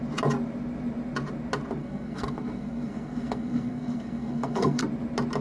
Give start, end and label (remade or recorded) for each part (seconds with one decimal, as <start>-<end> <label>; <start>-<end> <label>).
0.0-1.8 recorded; 1.8-4.8 remade; 4.8-5.4 recorded